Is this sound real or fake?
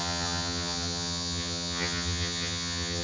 fake